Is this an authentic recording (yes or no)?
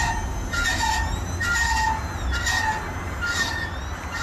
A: yes